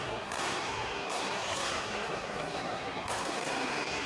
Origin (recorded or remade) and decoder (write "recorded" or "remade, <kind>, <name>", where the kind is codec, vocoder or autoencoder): remade, codec, SNAC